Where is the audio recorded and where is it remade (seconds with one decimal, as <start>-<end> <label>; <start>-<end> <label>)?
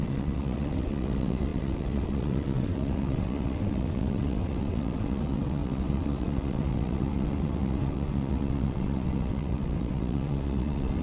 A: 0.0-11.0 remade